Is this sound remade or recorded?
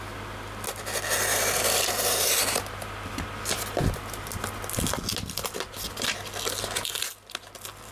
recorded